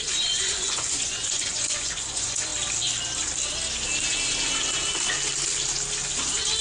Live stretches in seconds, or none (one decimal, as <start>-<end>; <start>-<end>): 2.5-6.6